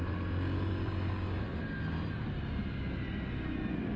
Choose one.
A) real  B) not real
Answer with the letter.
A